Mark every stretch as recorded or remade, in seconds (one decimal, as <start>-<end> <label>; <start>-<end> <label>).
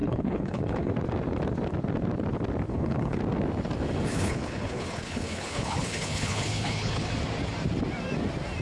0.0-0.9 remade; 0.9-2.7 recorded; 2.7-3.2 remade; 3.2-4.1 recorded; 4.1-7.1 remade; 7.1-8.6 recorded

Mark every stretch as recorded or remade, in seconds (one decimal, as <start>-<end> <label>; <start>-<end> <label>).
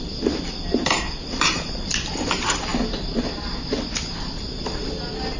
0.0-5.4 recorded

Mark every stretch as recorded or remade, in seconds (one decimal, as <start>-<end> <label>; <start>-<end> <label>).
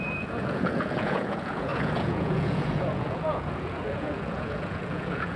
0.0-5.4 remade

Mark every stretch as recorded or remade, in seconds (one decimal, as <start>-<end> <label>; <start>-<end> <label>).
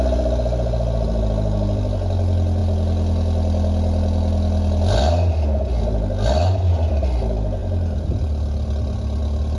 0.0-9.6 recorded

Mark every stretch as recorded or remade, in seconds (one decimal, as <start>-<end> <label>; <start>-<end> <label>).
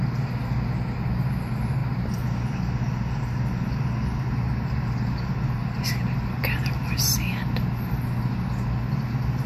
0.0-9.5 recorded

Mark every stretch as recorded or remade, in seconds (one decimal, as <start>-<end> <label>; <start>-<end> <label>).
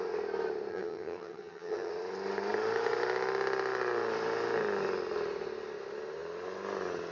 0.0-0.7 recorded; 0.7-1.9 remade; 1.9-7.1 recorded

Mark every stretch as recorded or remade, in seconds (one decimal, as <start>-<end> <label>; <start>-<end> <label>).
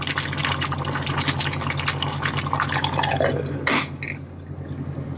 0.0-5.2 recorded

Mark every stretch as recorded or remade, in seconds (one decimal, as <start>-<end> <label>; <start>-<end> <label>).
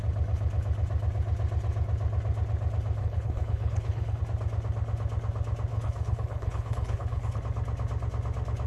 0.0-3.0 recorded; 3.0-4.2 remade; 4.2-5.7 recorded; 5.7-7.4 remade; 7.4-8.7 recorded